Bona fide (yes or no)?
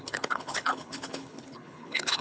no